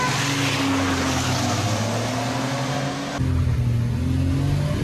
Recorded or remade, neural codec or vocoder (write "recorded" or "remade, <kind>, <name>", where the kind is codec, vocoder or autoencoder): recorded